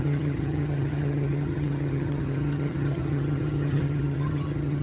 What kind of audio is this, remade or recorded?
remade